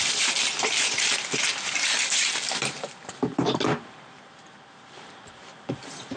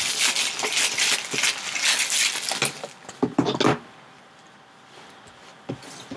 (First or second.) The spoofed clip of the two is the first